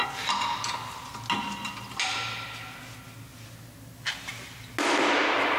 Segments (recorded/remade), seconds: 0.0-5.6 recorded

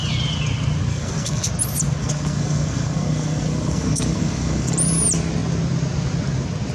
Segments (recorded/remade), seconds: 0.0-0.9 recorded; 0.9-1.5 remade; 1.5-2.0 recorded; 2.0-4.7 remade; 4.7-6.7 recorded

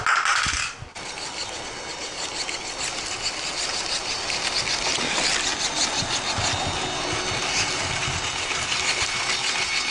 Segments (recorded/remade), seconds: 0.0-9.9 recorded